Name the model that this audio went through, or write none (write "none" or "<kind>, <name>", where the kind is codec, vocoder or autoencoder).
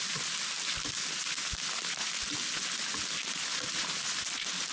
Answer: none